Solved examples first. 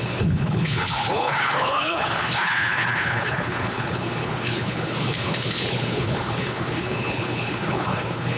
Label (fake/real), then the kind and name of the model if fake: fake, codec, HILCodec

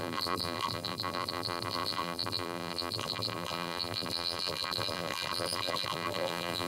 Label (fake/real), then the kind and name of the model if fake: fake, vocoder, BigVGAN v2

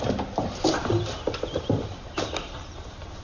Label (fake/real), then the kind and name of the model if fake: real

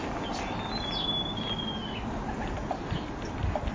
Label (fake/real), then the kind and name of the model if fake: real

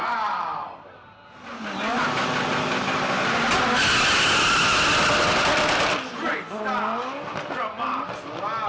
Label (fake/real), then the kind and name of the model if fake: real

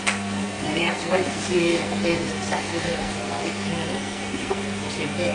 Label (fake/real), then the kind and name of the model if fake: fake, codec, SNAC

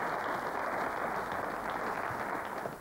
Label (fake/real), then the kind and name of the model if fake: real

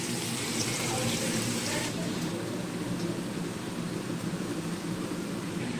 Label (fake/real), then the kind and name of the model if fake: fake, vocoder, BigVGAN v2